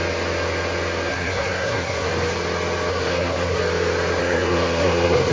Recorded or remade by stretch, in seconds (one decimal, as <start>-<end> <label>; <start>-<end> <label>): 0.0-1.1 recorded; 1.1-2.1 remade; 2.1-2.9 recorded; 2.9-3.6 remade; 3.6-4.2 recorded; 4.2-5.3 remade